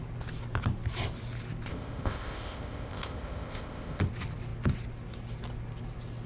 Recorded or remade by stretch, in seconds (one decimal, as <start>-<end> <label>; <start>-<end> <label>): 0.0-1.7 recorded; 1.7-4.0 remade; 4.0-6.3 recorded